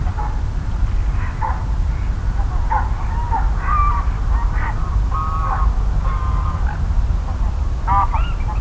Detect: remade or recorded recorded